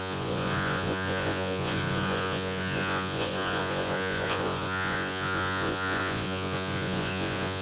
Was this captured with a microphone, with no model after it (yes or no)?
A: no